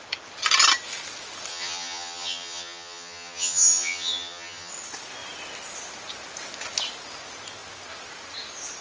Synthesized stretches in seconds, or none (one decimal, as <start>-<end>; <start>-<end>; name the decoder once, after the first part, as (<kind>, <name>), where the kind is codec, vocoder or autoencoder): 1.5-4.7 (vocoder, HiFi-GAN)